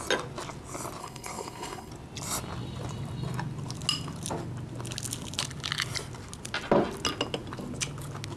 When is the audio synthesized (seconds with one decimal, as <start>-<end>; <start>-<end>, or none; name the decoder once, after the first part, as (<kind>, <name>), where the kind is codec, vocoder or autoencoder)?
1.0-1.9 (codec, HILCodec)